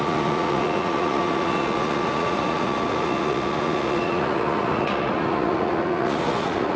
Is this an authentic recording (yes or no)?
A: no